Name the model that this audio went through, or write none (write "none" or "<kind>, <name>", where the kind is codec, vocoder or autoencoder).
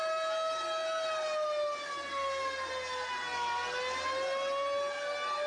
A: none